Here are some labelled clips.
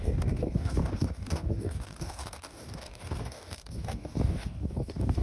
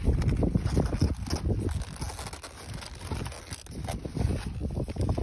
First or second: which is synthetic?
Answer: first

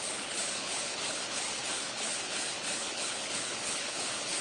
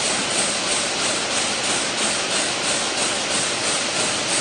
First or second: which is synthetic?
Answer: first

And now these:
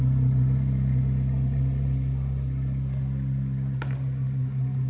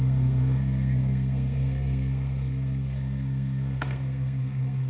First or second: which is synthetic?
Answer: second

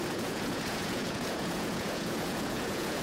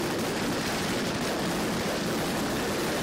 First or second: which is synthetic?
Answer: first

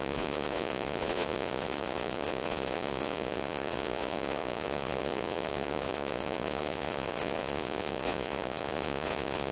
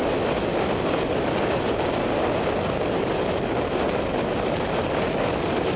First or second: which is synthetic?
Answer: first